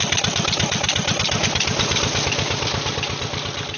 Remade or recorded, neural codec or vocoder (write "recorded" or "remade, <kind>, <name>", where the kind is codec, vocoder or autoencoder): recorded